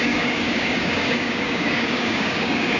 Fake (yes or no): yes